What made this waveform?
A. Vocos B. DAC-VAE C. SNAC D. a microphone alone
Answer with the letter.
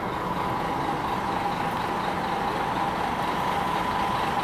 D